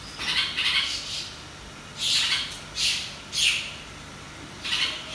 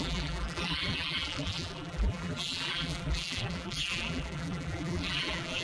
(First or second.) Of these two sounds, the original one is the first